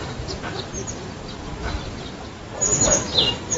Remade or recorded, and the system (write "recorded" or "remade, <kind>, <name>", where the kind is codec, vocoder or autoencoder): recorded